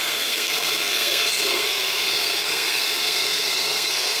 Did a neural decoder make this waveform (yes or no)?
yes